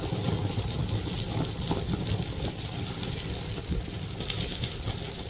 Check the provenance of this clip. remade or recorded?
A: remade